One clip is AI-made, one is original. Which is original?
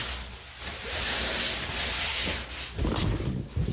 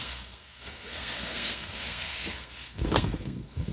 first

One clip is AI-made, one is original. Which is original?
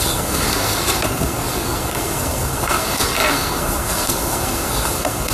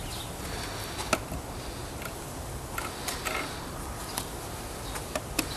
second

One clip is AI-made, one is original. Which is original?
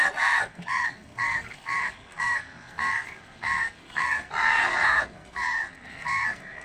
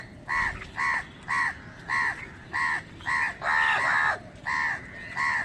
second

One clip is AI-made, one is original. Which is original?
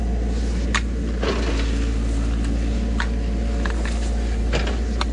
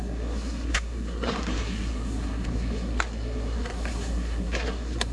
first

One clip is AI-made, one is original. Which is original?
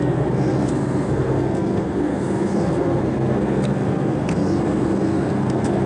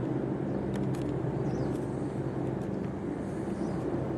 second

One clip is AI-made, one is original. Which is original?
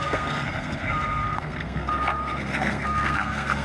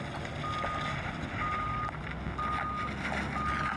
second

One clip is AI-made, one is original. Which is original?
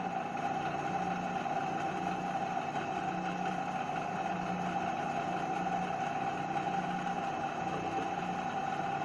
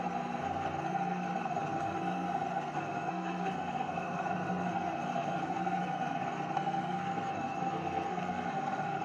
first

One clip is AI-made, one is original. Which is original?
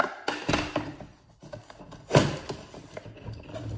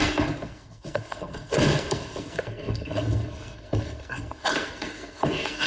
first